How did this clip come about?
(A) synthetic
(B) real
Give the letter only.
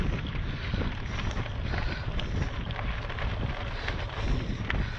B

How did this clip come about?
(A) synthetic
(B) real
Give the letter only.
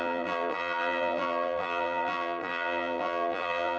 A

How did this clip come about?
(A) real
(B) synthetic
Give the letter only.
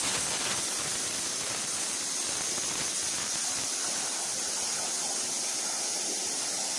A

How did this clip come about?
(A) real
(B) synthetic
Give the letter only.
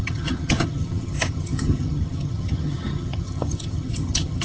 B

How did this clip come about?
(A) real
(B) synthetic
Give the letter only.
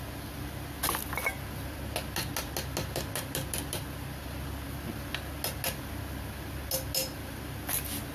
A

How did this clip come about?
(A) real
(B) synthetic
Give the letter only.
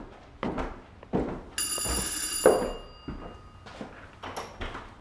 A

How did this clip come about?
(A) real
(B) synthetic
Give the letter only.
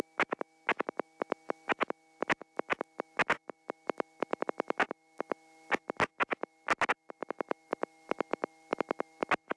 A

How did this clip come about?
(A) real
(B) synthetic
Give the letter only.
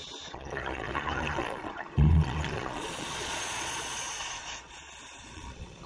B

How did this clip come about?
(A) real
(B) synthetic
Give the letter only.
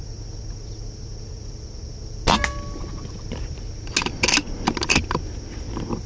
A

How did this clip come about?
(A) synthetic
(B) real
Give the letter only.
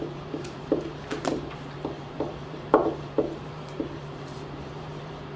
A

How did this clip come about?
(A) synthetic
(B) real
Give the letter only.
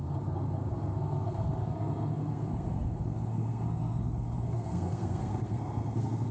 A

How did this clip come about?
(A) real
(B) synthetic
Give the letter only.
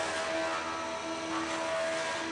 A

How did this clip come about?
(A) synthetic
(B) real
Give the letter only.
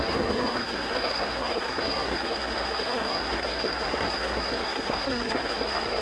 A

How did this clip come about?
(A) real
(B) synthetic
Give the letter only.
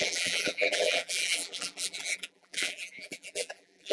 B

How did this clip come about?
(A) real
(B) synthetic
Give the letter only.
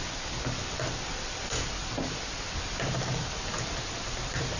A